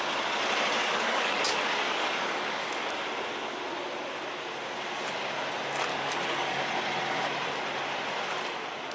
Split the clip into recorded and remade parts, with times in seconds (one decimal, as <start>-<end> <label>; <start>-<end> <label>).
0.0-0.8 recorded; 0.8-1.4 remade; 1.4-1.9 recorded; 1.9-2.9 remade; 2.9-5.9 recorded; 5.9-6.6 remade; 6.6-8.9 recorded